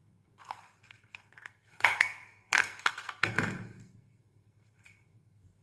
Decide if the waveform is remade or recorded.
remade